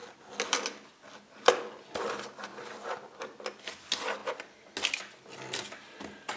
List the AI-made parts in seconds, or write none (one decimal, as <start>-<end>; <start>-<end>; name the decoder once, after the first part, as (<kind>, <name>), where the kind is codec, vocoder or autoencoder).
none

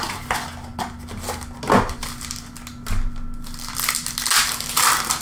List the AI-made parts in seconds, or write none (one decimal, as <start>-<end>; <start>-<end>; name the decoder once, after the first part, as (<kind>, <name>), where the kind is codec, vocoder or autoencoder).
none